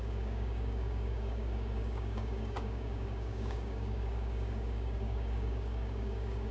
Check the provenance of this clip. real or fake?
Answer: fake